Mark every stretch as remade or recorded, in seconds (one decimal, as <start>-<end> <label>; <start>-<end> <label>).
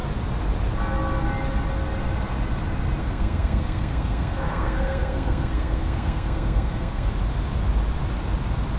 0.0-3.0 recorded; 3.0-7.1 remade; 7.1-8.8 recorded